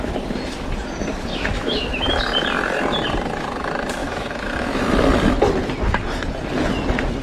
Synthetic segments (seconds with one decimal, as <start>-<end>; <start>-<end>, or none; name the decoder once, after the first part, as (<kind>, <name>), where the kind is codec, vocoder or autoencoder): 1.3-2.2 (autoencoder, DAC-VAE); 4.0-4.8